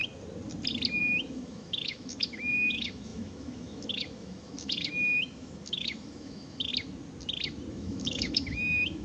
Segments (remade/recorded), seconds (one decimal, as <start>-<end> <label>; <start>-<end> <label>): 0.0-1.0 recorded; 1.0-6.7 remade; 6.7-7.7 recorded; 7.7-9.0 remade